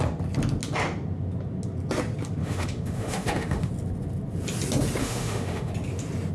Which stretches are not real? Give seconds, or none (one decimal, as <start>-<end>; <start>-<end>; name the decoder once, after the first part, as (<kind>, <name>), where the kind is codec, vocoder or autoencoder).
2.4-3.7 (autoencoder, DAC-VAE); 5.0-5.7